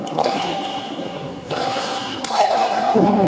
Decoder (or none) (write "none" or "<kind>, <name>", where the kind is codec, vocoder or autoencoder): codec, SNAC